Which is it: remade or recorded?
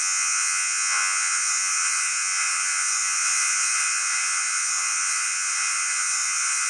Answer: remade